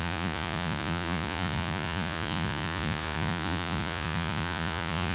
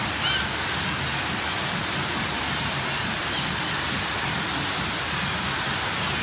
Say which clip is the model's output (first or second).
first